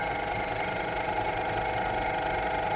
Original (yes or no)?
yes